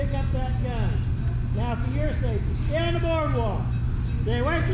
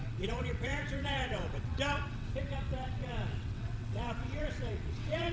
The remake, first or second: second